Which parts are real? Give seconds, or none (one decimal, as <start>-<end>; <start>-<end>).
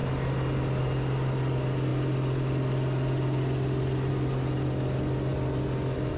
0.0-6.2